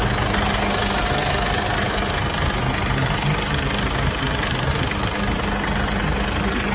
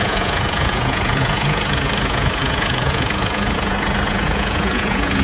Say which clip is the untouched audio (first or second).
first